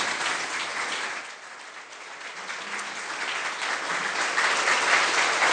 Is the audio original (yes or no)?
yes